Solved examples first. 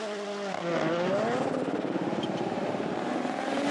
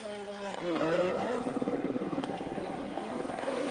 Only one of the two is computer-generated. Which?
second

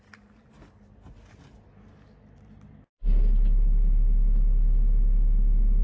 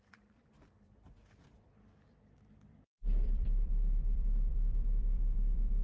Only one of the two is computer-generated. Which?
second